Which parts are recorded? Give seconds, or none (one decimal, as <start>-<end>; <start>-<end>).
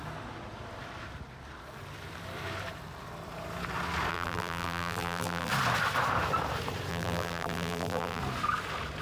0.0-4.1; 5.5-6.9; 8.2-9.0